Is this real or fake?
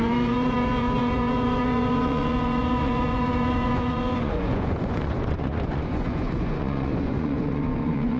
fake